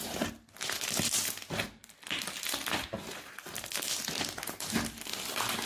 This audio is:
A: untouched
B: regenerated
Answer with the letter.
A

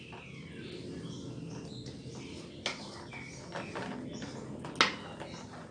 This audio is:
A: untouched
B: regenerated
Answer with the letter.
A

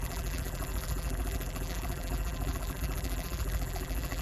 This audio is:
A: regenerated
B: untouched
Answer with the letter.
A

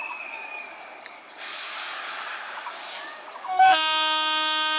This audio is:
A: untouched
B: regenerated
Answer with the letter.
B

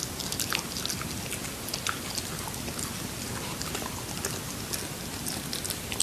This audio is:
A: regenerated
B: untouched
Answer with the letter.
B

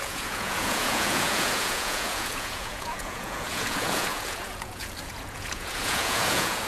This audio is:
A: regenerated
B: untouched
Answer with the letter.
A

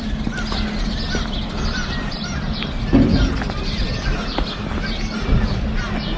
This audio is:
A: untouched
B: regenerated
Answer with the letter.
A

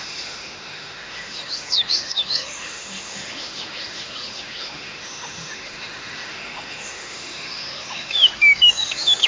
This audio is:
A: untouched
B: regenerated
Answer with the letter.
B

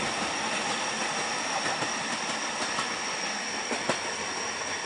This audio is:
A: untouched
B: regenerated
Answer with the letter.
A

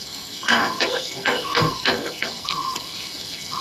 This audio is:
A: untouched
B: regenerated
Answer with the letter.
B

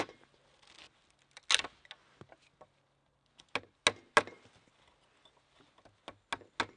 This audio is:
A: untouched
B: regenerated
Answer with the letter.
A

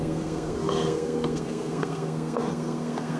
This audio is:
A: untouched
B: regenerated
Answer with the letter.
B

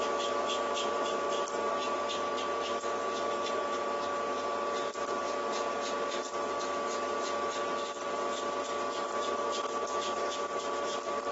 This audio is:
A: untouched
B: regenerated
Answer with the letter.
A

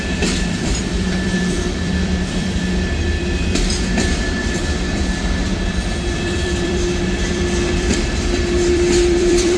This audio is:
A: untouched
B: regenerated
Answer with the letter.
B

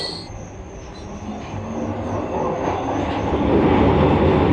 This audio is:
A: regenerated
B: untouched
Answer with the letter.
B